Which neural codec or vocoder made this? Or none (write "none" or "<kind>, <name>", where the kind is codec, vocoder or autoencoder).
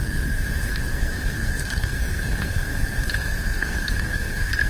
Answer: codec, SNAC